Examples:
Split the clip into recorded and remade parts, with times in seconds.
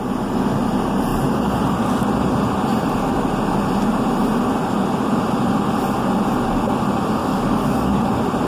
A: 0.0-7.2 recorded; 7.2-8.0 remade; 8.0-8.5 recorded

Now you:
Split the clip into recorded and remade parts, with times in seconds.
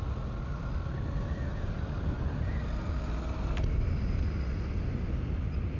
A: 0.0-1.5 recorded; 1.5-2.5 remade; 2.5-5.8 recorded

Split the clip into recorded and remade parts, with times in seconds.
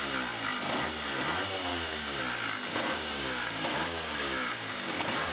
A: 0.0-1.7 recorded; 1.7-2.2 remade; 2.2-2.7 recorded; 2.7-5.3 remade